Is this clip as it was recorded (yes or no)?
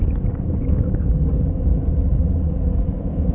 no